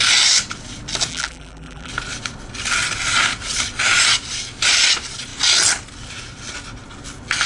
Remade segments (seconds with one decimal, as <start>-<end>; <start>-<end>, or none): 1.1-1.9